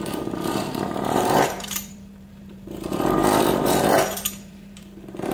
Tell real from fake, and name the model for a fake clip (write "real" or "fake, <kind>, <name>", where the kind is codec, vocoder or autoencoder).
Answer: fake, vocoder, BigVGAN v2